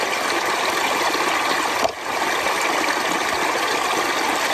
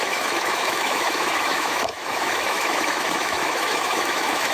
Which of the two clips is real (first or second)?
first